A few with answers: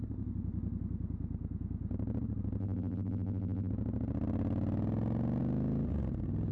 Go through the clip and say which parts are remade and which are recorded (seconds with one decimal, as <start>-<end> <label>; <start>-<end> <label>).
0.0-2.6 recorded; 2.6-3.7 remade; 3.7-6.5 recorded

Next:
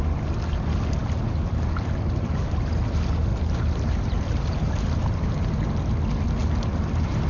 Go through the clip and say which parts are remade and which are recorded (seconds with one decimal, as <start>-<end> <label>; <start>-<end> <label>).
0.0-3.3 recorded; 3.3-5.5 remade; 5.5-6.4 recorded; 6.4-7.3 remade

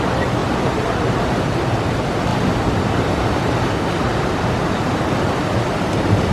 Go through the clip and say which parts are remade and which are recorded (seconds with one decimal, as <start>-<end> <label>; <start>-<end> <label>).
0.0-0.4 recorded; 0.4-1.1 remade; 1.1-2.3 recorded; 2.3-5.5 remade; 5.5-6.3 recorded

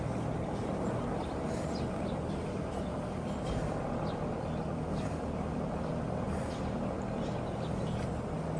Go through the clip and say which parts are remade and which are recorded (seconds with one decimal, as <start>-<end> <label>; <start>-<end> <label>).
0.0-8.6 recorded

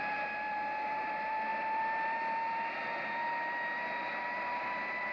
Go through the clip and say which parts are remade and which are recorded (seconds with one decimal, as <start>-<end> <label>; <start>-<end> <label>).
0.0-5.1 recorded